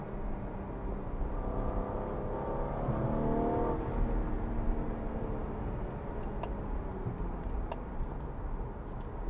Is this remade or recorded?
recorded